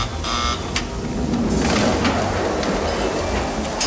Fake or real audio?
real